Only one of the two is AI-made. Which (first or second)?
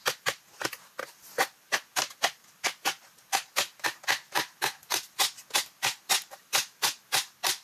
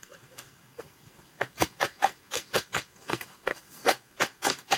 second